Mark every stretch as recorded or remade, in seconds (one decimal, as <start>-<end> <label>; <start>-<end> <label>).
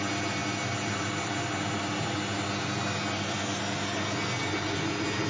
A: 0.0-5.3 recorded